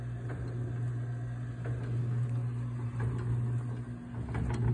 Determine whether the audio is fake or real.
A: real